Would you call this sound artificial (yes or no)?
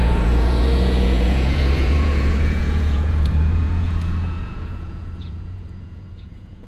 yes